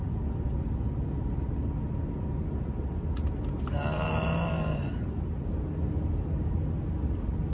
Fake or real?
real